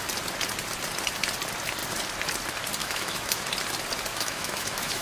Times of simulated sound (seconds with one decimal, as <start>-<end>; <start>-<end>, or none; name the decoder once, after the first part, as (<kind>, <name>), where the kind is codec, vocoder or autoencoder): 2.8-3.5 (autoencoder, DAC-VAE); 4.1-5.0